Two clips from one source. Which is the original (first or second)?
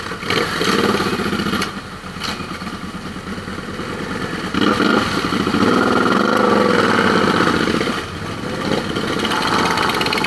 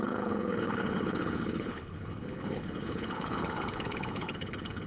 first